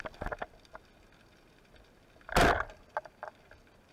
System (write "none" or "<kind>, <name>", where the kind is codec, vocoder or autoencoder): none